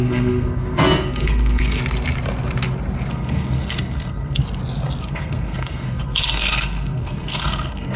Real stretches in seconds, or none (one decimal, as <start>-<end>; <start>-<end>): 1.8-3.1; 4.4-5.0